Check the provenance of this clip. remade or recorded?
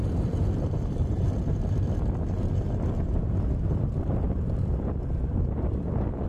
recorded